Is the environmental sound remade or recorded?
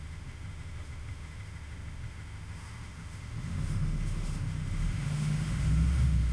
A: remade